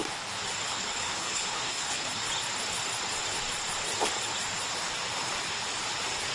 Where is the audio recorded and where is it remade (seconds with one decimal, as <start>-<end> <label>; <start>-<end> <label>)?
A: 0.0-0.7 recorded; 0.7-2.2 remade; 2.2-6.3 recorded